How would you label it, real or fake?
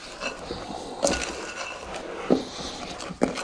real